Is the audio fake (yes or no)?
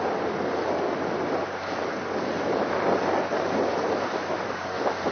no